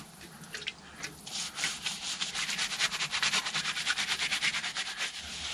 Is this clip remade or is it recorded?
recorded